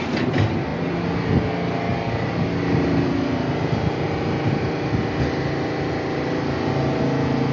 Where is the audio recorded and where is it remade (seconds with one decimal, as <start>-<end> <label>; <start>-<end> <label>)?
0.0-7.5 recorded